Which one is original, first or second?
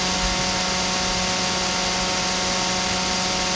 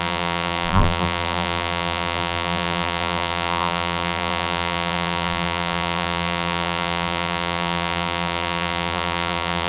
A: first